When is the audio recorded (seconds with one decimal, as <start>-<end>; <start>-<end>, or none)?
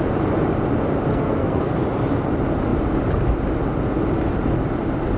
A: 0.0-1.1; 1.6-5.2